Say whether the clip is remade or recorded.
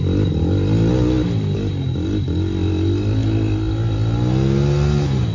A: recorded